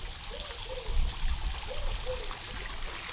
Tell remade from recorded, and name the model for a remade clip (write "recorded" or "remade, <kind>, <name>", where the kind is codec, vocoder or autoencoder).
recorded